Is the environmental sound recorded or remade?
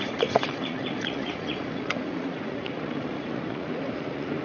remade